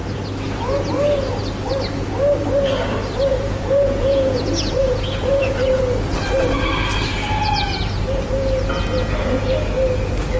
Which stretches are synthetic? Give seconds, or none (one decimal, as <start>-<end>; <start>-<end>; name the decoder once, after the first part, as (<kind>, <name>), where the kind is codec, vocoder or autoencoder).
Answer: 3.3-5.8 (vocoder, Vocos)